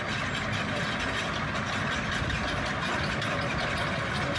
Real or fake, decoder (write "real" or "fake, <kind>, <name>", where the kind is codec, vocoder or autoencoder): real